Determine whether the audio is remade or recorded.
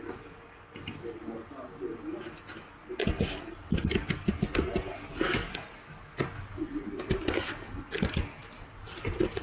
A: recorded